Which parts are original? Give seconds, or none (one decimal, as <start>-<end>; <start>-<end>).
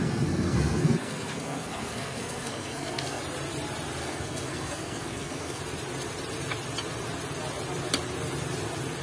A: 3.2-4.0; 5.6-9.0